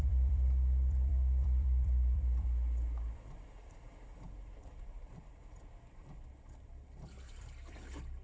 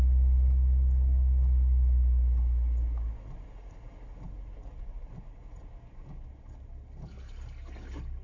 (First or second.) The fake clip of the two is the first